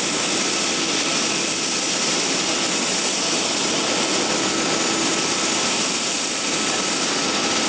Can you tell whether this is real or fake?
real